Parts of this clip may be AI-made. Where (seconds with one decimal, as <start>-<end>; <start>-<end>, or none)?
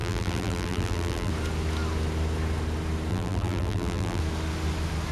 0.0-1.3; 3.1-4.2